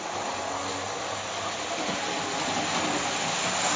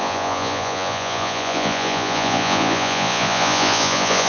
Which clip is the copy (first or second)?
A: second